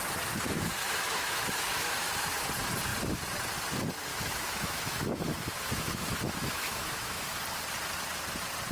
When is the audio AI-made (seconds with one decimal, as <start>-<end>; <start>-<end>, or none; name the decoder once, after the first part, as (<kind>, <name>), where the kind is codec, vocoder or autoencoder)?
0.8-2.5 (autoencoder, DAC-VAE); 4.1-7.4